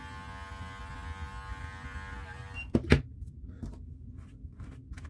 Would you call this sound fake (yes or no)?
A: no